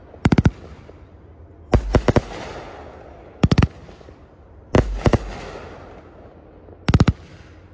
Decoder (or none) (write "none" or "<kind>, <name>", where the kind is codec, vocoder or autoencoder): none